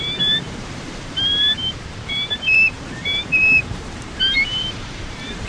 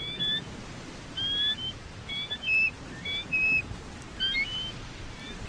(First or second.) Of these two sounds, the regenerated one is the first